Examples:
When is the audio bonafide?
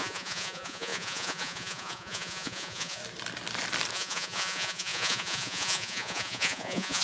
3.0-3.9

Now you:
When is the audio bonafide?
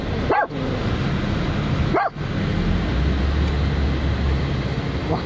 0.0-5.3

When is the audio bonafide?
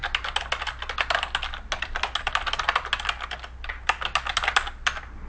0.0-5.3